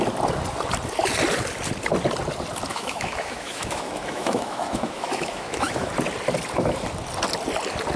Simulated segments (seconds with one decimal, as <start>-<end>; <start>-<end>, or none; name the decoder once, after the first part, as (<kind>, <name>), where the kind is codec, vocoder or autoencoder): 2.7-5.9 (autoencoder, DAC-VAE)